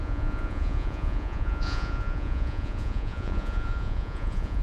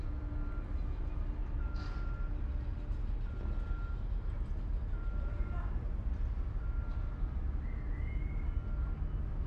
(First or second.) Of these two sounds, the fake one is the first